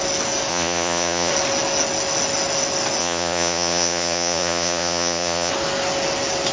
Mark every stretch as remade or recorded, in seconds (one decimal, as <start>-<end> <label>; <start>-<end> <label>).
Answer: 0.0-0.5 recorded; 0.5-1.3 remade; 1.3-3.0 recorded; 3.0-5.5 remade; 5.5-6.5 recorded